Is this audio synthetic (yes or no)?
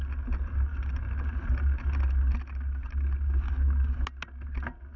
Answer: no